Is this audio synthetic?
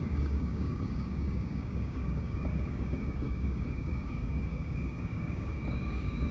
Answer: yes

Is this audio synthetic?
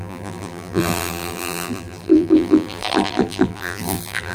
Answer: yes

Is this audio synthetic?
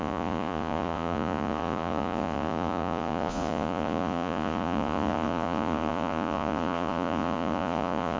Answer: yes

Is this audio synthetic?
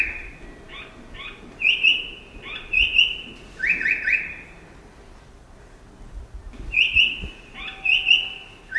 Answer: no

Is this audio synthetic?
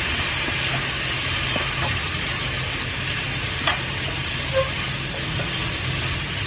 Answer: no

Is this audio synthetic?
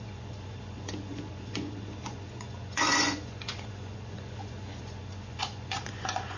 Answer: yes